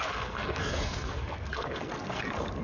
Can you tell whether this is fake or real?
fake